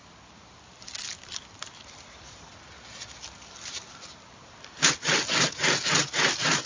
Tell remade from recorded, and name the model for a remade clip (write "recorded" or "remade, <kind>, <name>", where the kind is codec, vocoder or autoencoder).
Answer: recorded